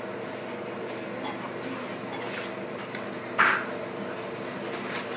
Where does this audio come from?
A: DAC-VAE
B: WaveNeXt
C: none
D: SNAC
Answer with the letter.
C